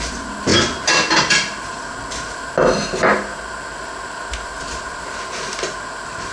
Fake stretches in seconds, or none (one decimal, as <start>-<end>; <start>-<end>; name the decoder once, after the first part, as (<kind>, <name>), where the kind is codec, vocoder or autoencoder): none